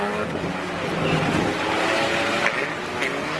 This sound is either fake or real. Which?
real